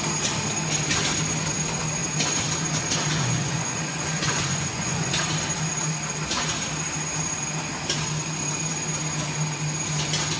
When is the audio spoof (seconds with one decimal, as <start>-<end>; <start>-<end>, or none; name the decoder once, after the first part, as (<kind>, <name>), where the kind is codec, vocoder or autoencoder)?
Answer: 3.1-5.2 (vocoder, Vocos)